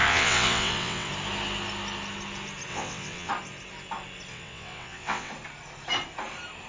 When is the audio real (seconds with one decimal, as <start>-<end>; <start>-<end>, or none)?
1.1-2.7; 3.3-4.3; 5.3-6.7